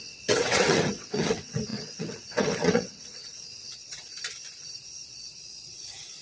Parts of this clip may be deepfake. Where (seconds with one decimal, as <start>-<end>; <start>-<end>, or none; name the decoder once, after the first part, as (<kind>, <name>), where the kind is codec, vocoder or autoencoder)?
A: 0.0-4.1 (vocoder, WaveNeXt); 5.1-6.2